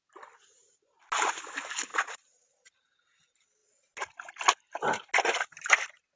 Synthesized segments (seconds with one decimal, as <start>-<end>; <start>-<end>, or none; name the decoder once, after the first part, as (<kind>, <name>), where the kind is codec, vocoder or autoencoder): 1.9-2.8 (vocoder, Vocos)